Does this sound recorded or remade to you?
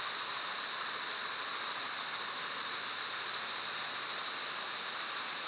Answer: recorded